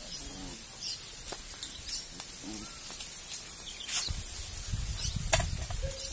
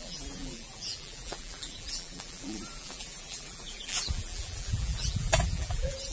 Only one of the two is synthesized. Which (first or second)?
second